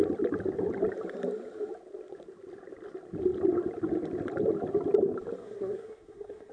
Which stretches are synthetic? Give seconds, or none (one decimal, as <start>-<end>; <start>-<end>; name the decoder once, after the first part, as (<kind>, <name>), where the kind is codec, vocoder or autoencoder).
5.4-6.5 (codec, SNAC)